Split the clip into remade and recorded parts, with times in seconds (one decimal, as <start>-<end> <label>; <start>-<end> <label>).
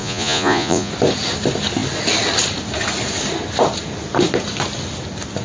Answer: 0.0-0.9 remade; 0.9-5.4 recorded